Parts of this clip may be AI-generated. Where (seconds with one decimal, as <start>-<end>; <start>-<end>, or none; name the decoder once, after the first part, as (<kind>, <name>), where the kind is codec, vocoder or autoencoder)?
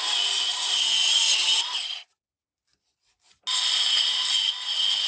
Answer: none